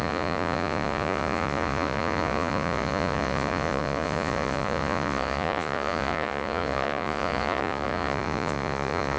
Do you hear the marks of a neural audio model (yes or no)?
yes